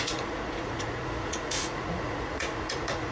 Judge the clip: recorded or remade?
remade